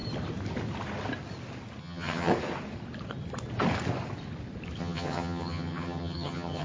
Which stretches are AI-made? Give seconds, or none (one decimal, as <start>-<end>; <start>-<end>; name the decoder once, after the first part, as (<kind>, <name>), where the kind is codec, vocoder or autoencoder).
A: 1.8-2.3 (vocoder, HiFi-GAN); 4.8-6.6